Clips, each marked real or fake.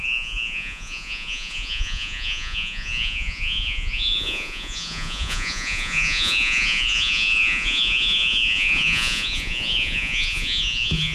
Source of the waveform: fake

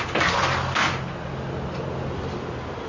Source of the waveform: real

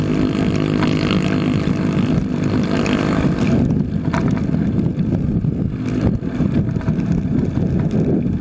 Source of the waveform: real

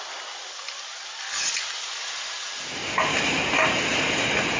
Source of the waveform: real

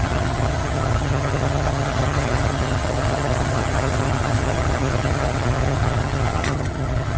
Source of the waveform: fake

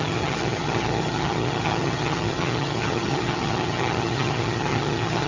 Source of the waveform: fake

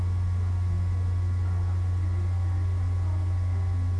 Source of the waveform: real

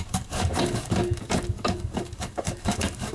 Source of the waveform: fake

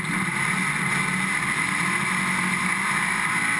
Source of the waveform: real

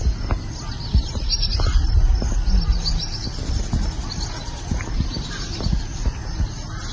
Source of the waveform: real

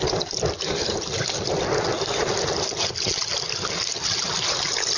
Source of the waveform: real